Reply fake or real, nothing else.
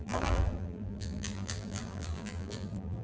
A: fake